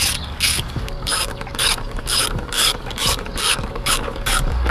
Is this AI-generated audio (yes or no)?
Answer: yes